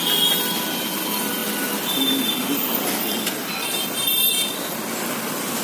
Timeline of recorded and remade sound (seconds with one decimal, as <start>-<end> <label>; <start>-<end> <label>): 0.0-5.6 recorded